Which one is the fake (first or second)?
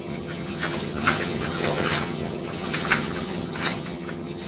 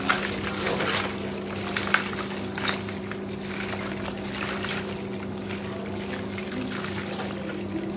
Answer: first